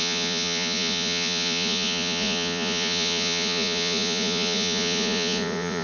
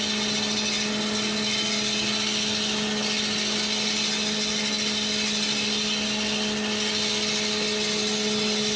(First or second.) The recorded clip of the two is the second